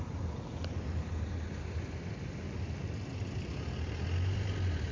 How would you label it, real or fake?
fake